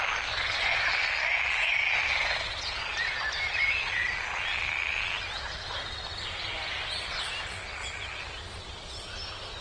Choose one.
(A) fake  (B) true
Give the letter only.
B